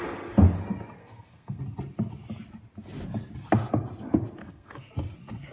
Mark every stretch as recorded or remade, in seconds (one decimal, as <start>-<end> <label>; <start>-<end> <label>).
0.0-1.0 recorded; 1.0-1.6 remade; 1.6-4.4 recorded; 4.4-4.9 remade; 4.9-5.5 recorded